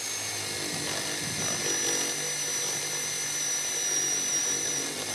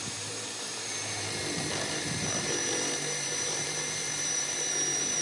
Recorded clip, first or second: first